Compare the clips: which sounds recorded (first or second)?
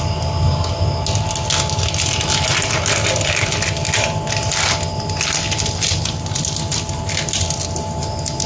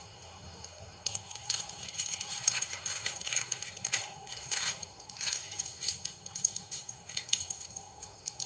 first